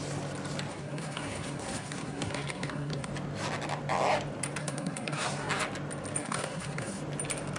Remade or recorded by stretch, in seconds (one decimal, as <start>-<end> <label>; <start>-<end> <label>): 0.0-0.7 recorded; 0.7-3.1 remade; 3.1-4.6 recorded; 4.6-5.5 remade; 5.5-6.2 recorded; 6.2-7.0 remade; 7.0-7.6 recorded